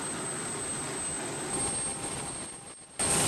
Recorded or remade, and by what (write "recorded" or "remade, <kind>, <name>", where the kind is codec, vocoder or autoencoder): recorded